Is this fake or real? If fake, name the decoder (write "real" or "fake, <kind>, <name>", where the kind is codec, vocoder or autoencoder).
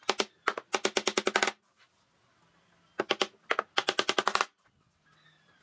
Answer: real